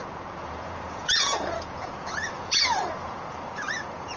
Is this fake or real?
fake